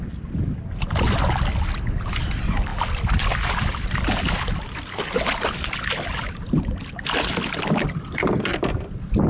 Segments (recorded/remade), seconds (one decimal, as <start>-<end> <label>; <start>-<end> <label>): 0.0-9.3 recorded